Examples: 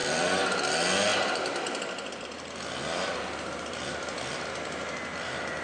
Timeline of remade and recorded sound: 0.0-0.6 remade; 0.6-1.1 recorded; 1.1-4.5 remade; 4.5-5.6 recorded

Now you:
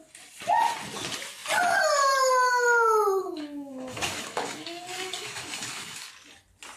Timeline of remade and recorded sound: 0.0-3.2 recorded; 3.2-6.1 remade; 6.1-6.8 recorded

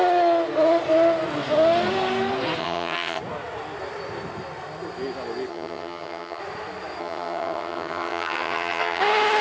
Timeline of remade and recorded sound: 0.0-2.6 recorded; 2.6-3.2 remade; 3.2-5.5 recorded; 5.5-6.4 remade; 6.4-7.0 recorded; 7.0-9.0 remade; 9.0-9.4 recorded